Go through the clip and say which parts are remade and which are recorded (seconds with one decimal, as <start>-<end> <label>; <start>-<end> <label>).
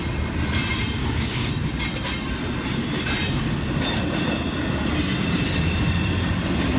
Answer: 0.0-1.0 recorded; 1.0-1.5 remade; 1.5-6.8 recorded